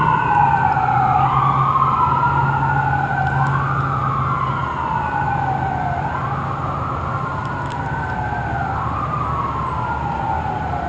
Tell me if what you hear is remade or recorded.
recorded